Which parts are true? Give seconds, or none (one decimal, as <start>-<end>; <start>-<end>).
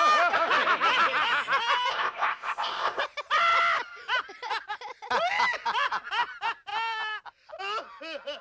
0.0-1.9; 3.0-8.4